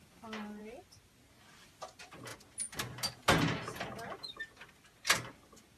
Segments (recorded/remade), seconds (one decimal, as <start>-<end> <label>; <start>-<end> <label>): 0.0-5.8 recorded